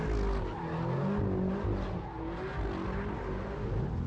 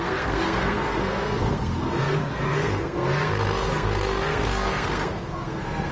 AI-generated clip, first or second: second